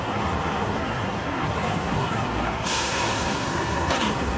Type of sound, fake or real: fake